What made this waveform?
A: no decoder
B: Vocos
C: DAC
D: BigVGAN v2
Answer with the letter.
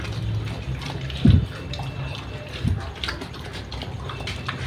A